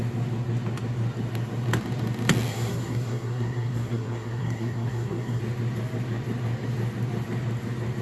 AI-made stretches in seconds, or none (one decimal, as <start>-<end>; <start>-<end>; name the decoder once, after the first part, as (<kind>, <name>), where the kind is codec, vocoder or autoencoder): 2.5-5.4 (codec, SNAC)